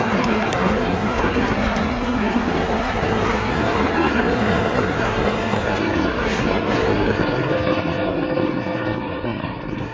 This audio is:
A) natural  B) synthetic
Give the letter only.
B